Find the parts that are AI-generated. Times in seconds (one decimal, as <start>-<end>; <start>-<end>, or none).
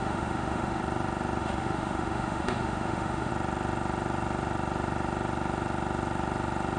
0.0-0.8; 1.4-3.3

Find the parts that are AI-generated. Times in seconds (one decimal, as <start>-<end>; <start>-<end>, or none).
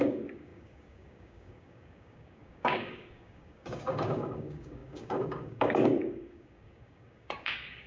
0.0-7.9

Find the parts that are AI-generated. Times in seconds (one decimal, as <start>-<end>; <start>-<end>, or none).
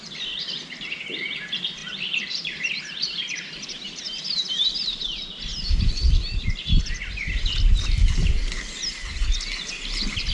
1.8-3.2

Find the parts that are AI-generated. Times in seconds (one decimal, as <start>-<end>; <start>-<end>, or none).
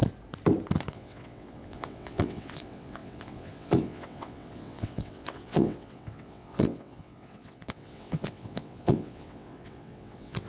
0.9-10.5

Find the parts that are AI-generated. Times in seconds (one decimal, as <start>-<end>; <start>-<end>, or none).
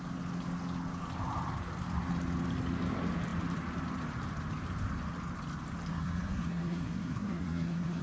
5.9-8.0